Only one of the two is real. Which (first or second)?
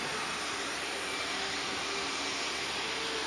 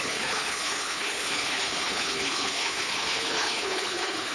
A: first